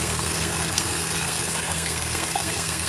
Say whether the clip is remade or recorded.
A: remade